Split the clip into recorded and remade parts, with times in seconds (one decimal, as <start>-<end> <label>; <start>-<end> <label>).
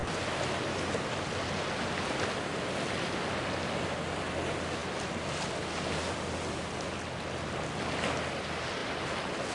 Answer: 0.0-9.5 recorded